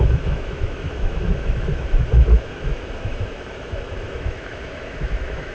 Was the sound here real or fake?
fake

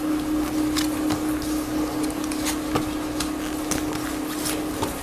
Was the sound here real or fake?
real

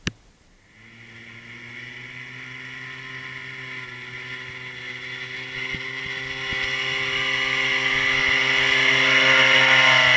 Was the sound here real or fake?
real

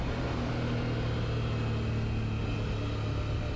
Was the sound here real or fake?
real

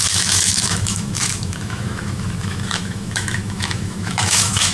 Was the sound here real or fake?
fake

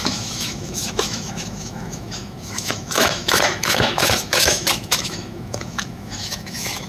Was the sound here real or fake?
fake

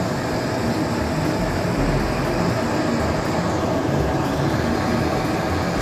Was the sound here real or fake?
real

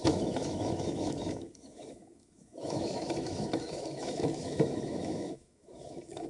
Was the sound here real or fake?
fake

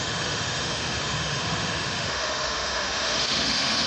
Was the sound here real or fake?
fake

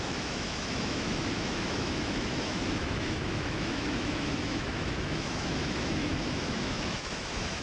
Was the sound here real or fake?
fake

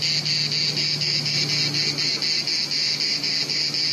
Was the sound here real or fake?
real